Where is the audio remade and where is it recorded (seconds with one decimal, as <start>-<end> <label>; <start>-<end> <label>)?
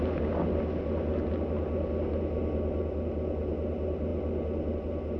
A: 0.0-5.2 recorded